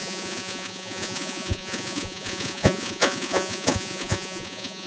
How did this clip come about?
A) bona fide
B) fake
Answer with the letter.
B